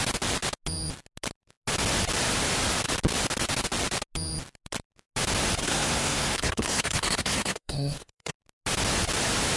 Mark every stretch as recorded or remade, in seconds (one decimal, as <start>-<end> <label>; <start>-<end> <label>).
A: 0.0-5.6 recorded; 5.6-8.3 remade; 8.3-9.6 recorded